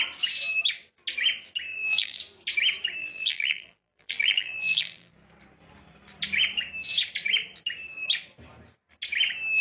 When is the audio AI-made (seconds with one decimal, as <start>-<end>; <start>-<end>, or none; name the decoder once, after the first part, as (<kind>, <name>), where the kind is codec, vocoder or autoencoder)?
1.7-2.2 (vocoder, BigVGAN v2); 3.0-5.1